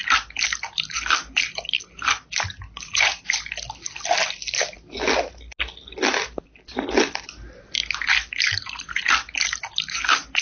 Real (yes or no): yes